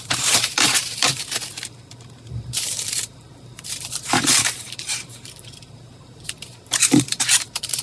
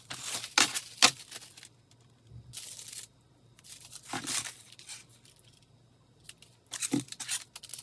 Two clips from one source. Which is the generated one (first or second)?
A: first